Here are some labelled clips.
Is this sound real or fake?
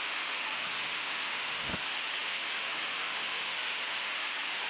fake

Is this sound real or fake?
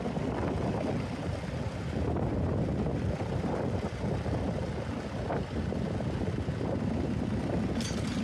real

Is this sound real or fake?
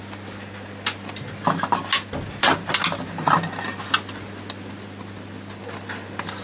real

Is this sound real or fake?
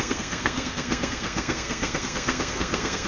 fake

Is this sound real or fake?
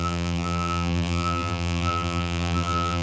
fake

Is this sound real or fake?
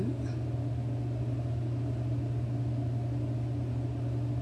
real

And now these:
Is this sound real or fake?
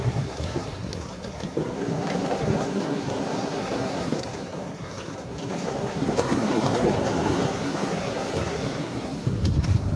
fake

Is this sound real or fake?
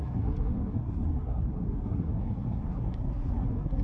fake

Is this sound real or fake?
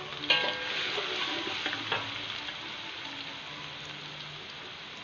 real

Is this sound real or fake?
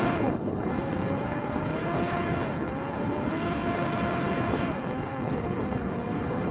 fake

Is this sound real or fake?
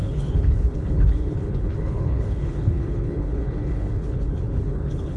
fake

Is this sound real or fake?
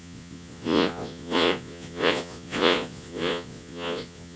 fake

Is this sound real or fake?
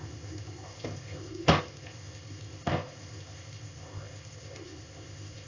fake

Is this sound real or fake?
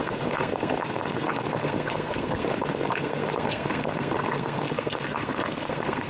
fake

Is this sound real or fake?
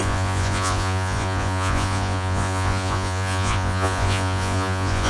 fake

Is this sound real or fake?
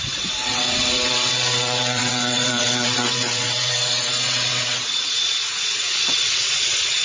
fake